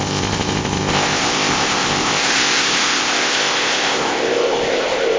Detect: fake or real fake